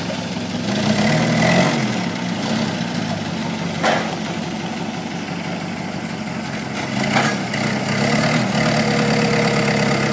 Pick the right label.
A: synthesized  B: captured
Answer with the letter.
B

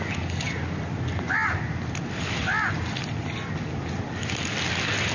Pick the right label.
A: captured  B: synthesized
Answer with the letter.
A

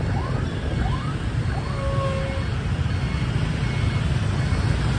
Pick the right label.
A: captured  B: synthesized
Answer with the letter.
A